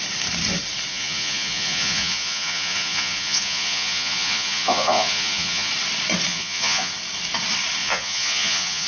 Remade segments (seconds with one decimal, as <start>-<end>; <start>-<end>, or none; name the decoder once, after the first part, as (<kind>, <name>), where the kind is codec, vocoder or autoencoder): 0.9-5.7 (vocoder, Vocos); 6.3-6.9; 7.8-8.9